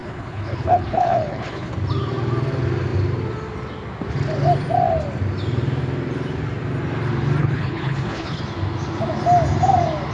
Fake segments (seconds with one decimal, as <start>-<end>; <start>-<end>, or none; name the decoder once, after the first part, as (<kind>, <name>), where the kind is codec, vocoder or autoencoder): 0.0-1.7 (codec, HILCodec); 7.4-8.4